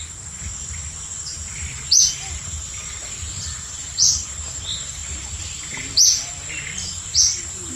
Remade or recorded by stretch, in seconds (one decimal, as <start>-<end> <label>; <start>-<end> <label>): 0.0-7.8 recorded